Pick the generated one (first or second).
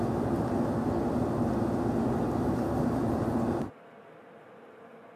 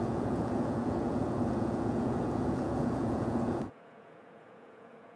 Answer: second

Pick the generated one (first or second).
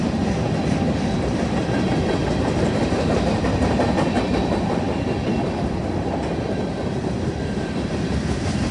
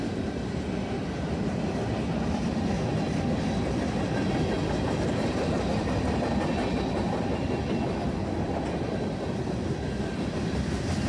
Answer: first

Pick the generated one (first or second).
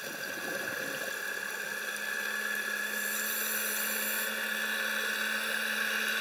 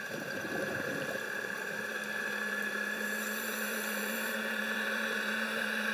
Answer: second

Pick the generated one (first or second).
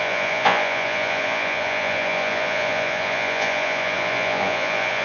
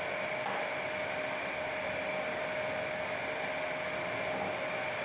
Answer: first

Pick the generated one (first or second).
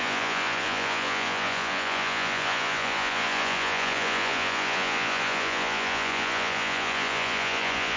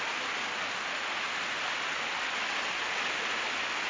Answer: first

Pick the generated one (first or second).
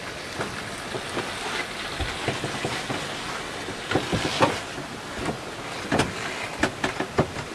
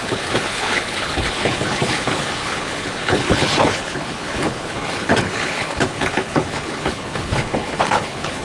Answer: second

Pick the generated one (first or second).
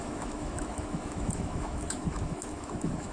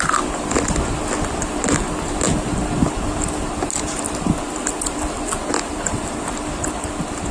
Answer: first